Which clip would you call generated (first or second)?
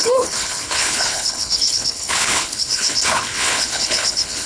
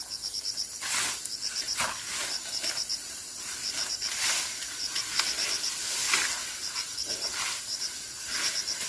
first